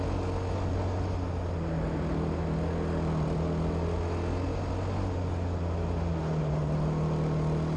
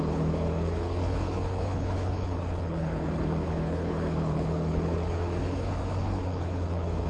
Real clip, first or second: first